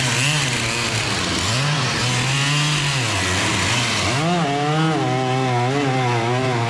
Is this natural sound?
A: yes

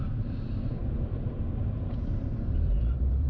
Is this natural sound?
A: no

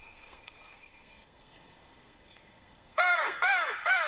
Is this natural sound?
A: no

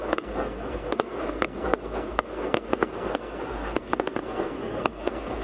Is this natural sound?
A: no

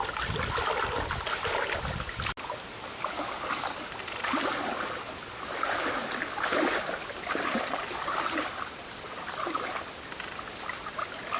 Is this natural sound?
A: yes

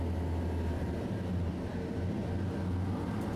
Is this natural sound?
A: yes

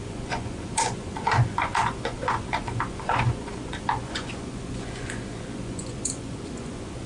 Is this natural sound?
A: no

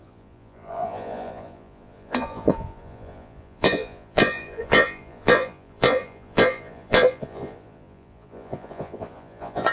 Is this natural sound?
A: no